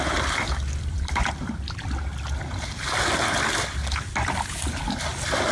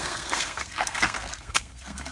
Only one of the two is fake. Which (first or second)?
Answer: second